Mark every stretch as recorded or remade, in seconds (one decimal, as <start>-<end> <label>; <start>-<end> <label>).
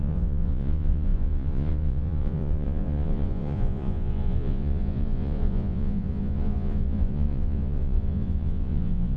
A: 0.0-9.2 remade